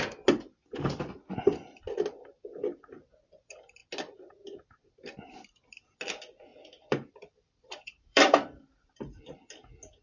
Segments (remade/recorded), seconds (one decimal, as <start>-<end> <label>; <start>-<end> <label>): 0.0-6.5 recorded; 6.5-9.2 remade; 9.2-10.0 recorded